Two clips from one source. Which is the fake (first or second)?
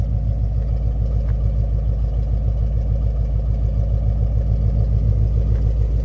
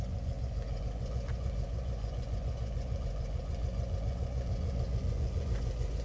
second